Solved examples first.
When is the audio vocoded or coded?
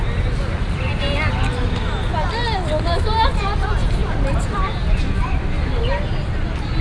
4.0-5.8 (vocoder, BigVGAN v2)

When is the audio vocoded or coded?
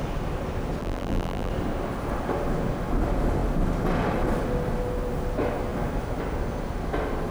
0.8-1.5 (vocoder, BigVGAN v2)